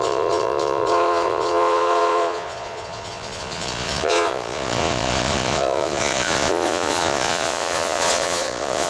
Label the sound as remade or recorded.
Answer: remade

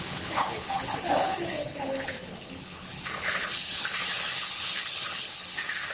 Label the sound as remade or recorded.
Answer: remade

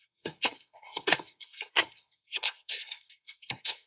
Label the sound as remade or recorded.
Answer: remade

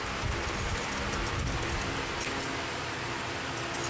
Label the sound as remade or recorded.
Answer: recorded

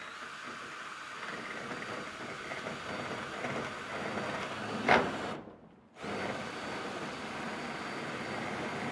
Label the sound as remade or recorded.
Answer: recorded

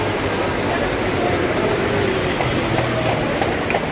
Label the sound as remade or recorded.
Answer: recorded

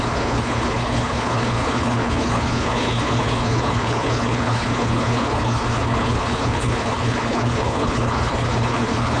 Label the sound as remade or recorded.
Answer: remade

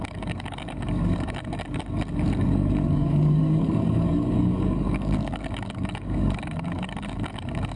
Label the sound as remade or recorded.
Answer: remade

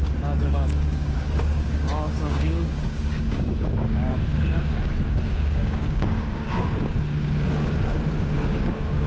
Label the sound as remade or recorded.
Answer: remade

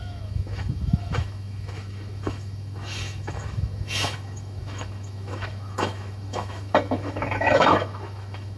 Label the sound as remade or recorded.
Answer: remade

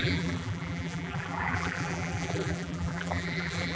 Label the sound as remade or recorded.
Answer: remade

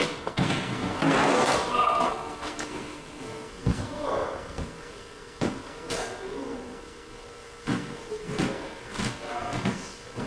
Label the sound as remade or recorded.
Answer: remade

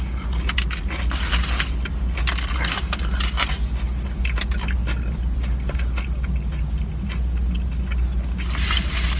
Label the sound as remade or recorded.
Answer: recorded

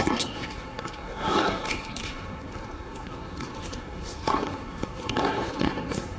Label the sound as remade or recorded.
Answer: remade